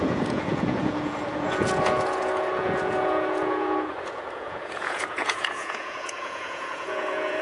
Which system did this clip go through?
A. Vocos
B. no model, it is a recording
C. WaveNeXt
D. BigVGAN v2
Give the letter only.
A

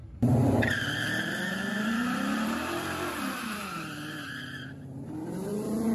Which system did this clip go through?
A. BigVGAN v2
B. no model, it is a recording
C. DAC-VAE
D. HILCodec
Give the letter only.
A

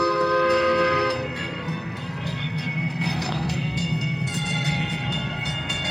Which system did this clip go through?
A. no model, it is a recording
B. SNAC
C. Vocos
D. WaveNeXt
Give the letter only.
B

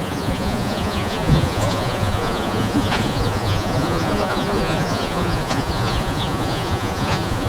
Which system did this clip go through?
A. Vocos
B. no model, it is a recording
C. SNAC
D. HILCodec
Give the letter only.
A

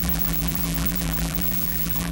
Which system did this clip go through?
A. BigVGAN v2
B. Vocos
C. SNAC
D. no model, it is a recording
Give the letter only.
A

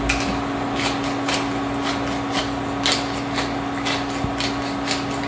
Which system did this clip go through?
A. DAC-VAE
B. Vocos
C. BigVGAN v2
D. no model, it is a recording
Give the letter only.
D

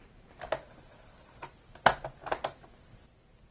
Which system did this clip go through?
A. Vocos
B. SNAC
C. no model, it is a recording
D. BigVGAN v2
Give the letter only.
C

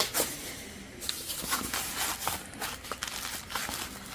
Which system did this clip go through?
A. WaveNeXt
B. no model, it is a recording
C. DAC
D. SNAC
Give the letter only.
B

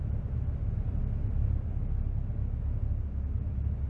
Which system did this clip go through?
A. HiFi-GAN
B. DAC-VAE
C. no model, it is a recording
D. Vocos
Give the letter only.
C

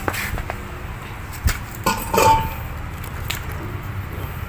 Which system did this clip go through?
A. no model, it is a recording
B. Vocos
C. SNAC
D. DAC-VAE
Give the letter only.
A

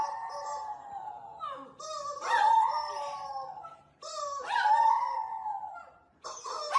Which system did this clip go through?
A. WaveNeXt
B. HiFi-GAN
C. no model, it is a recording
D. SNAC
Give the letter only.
C